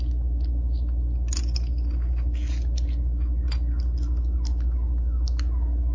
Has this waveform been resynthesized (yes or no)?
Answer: no